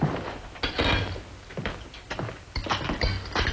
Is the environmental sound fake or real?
real